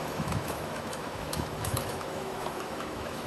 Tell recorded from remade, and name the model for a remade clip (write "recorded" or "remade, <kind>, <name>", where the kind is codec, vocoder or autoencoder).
remade, autoencoder, DAC-VAE